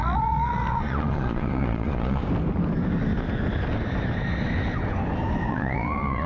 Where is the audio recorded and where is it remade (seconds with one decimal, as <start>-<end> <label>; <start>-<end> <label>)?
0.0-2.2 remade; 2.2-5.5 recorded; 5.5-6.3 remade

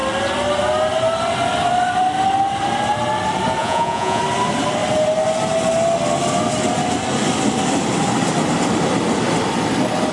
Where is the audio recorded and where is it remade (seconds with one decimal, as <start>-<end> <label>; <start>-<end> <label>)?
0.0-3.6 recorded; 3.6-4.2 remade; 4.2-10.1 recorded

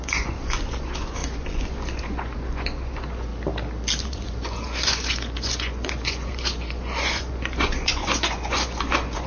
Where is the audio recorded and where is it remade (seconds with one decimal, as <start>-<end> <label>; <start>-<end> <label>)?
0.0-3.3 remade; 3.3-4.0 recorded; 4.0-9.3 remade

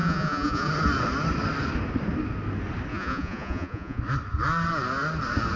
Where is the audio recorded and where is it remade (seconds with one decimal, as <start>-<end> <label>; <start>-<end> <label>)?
0.0-0.7 remade; 0.7-2.9 recorded; 2.9-4.0 remade; 4.0-5.6 recorded